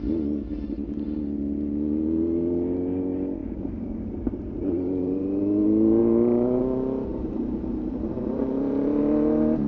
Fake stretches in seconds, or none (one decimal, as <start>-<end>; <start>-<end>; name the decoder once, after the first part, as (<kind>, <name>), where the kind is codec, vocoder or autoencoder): 3.4-5.4 (vocoder, BigVGAN v2); 6.0-6.6; 7.1-9.0